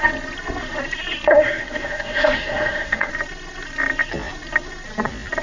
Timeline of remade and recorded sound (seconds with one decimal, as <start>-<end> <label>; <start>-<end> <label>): 0.0-1.3 recorded; 1.3-3.1 remade; 3.1-5.4 recorded